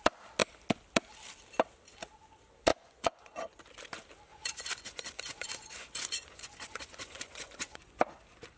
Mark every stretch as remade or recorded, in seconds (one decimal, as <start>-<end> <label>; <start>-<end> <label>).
0.0-2.7 recorded; 2.7-3.6 remade; 3.6-4.3 recorded; 4.3-8.0 remade; 8.0-8.6 recorded